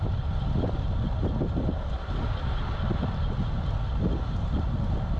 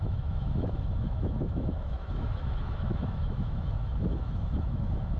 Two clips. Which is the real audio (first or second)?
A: first